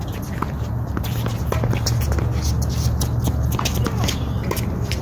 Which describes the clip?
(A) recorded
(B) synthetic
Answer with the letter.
A